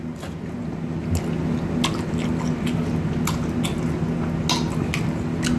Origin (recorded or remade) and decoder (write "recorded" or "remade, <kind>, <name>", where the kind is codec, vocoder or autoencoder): recorded